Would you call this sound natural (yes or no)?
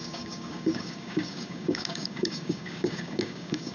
no